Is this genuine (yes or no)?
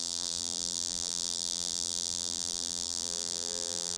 no